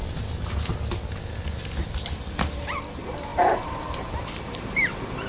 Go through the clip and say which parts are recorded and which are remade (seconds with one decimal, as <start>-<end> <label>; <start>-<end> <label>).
0.0-2.4 recorded; 2.4-5.3 remade